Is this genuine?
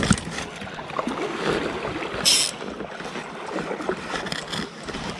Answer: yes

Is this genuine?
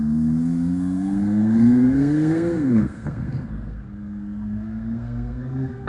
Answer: no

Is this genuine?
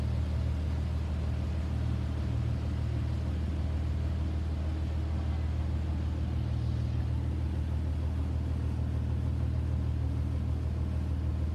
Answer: yes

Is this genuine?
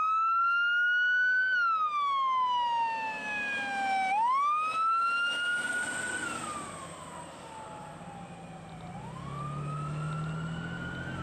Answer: yes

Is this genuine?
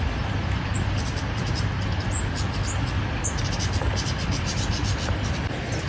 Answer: yes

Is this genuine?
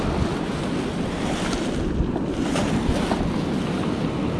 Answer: yes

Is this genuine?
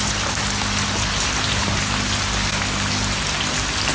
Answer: yes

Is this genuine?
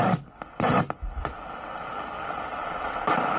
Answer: yes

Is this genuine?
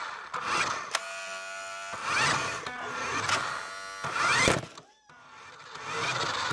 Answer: yes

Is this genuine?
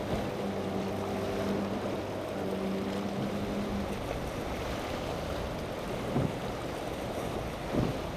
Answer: yes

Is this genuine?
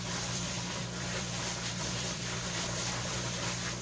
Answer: no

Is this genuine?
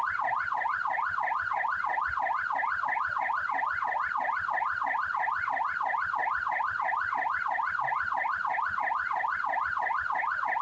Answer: yes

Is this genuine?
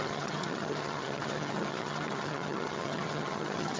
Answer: no